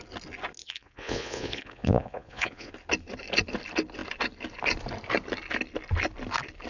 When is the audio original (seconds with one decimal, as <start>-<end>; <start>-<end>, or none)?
0.0-0.6; 2.7-6.7